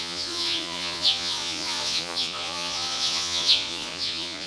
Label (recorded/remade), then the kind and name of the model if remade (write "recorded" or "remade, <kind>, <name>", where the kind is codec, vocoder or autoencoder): remade, vocoder, Vocos